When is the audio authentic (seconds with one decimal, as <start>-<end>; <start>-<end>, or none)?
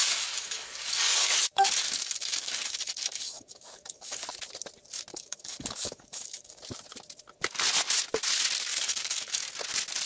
4.3-5.1; 6.6-8.7; 9.5-10.1